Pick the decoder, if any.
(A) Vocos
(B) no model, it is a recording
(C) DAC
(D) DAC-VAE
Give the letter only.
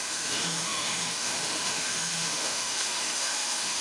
D